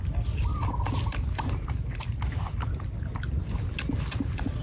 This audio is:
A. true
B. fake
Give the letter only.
A